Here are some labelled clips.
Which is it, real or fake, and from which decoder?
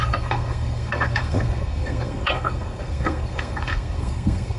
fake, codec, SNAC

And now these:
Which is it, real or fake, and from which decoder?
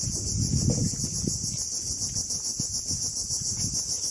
real